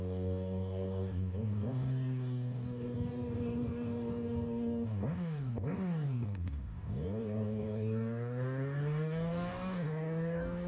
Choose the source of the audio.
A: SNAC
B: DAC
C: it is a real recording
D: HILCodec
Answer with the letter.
B